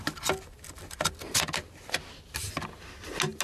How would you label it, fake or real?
real